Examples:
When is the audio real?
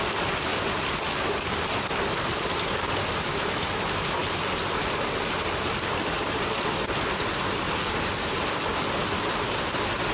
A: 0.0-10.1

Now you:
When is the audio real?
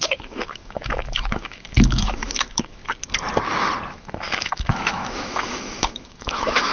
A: 2.8-3.9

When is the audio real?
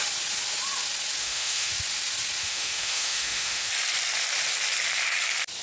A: 0.0-1.2; 1.7-2.4; 3.7-5.6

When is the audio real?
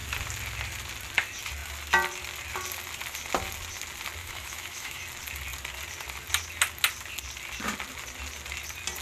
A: 0.0-4.2; 5.0-9.0